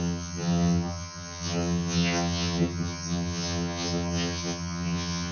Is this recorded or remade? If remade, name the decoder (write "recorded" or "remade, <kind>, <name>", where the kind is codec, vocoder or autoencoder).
remade, vocoder, HiFi-GAN